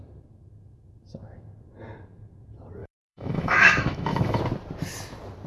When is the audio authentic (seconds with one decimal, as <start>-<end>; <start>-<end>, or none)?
0.0-2.8; 4.4-5.5